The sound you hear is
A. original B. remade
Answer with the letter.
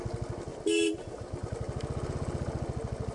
A